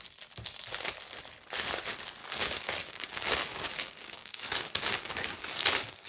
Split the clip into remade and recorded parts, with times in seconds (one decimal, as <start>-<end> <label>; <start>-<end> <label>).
0.0-2.2 recorded; 2.2-6.1 remade